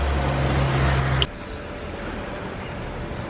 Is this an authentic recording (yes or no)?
yes